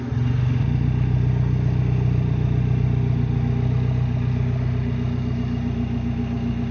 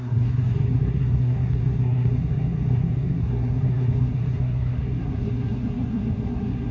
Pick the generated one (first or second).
second